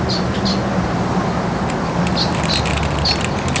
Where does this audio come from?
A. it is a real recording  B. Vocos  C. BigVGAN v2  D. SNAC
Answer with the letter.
A